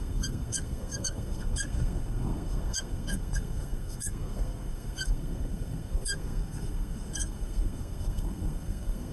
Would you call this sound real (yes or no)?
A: no